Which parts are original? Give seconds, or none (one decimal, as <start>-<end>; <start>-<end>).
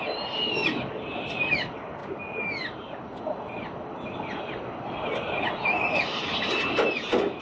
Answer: 0.0-2.0; 3.2-7.4